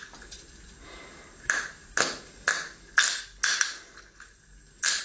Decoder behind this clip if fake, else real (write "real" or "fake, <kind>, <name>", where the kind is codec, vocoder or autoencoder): real